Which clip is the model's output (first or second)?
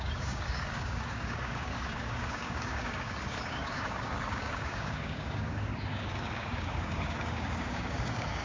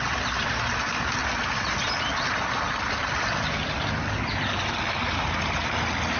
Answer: first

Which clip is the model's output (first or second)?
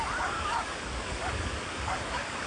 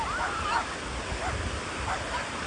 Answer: first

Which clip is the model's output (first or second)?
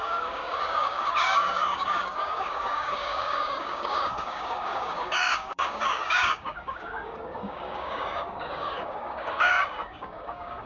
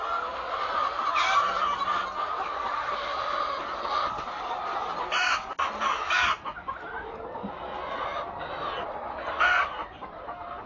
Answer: first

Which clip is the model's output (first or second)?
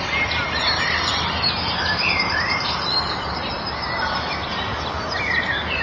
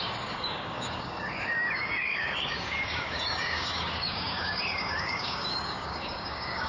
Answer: second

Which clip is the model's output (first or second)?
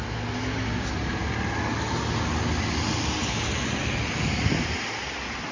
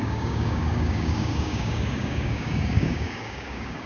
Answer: second